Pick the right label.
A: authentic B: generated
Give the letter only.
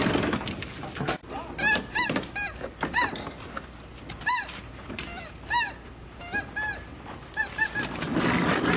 A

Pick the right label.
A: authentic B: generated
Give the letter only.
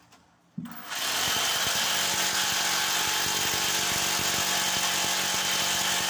A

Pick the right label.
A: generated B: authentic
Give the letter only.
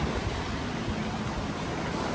B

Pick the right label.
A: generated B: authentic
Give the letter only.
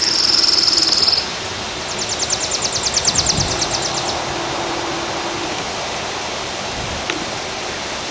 B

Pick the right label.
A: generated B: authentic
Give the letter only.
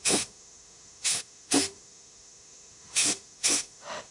A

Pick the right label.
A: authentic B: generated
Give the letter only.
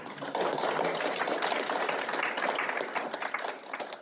A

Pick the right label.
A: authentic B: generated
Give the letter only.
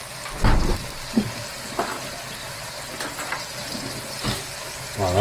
A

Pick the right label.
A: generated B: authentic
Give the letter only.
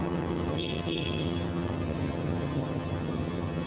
A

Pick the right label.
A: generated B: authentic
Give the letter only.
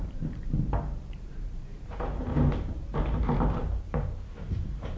A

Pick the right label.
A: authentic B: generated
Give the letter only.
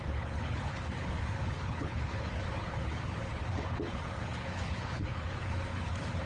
B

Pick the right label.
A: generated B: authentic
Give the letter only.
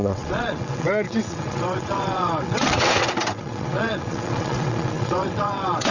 A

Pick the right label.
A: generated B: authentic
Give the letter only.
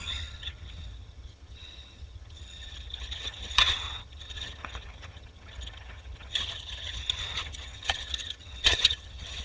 A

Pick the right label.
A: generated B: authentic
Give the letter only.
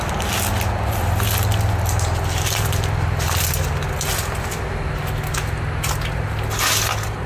B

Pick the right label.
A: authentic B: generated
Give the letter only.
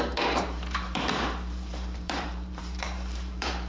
B